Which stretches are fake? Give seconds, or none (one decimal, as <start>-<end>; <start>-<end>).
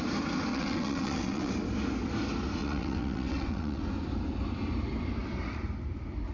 0.5-1.5; 2.6-3.8